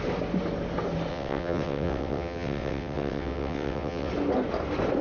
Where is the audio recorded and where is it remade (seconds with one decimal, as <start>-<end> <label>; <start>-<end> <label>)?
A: 0.0-1.1 recorded; 1.1-4.1 remade; 4.1-5.0 recorded